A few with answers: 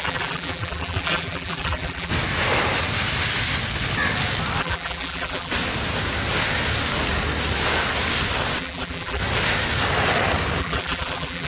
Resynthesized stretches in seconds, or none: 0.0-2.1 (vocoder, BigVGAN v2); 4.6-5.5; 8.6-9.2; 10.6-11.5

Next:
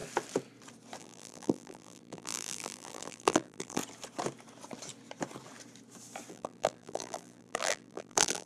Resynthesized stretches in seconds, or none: 1.0-3.8 (vocoder, BigVGAN v2); 6.3-8.5

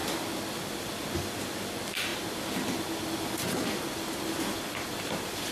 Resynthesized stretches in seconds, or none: 0.0-1.6 (vocoder, BigVGAN v2); 2.1-5.5

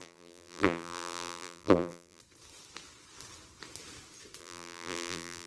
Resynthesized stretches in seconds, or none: 0.0-2.2 (vocoder, BigVGAN v2); 4.4-5.5